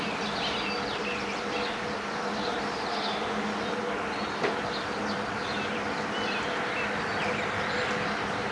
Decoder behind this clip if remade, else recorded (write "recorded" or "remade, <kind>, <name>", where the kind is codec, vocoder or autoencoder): recorded